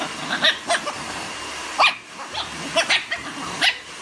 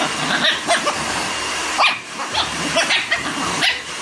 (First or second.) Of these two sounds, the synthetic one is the first